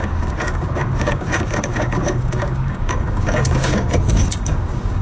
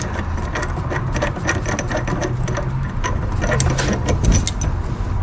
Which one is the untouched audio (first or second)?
second